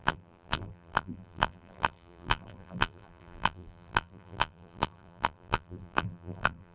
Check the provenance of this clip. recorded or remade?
remade